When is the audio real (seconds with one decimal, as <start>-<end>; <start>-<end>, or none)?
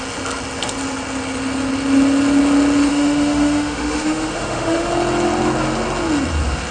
0.0-2.9; 4.9-6.7